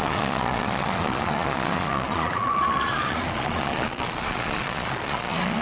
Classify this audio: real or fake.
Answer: fake